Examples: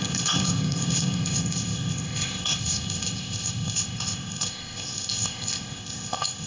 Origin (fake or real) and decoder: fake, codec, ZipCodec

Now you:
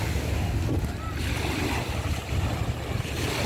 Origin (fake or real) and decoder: real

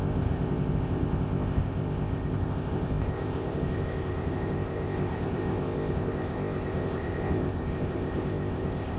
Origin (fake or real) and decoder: fake, codec, ZipCodec